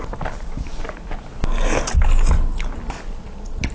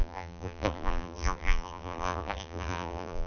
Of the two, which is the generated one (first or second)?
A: second